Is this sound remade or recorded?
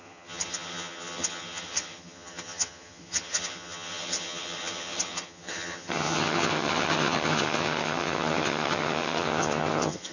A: remade